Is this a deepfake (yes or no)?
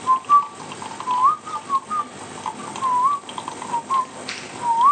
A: no